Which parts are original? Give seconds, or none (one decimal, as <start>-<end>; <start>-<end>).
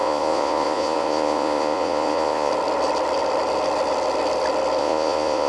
2.5-4.8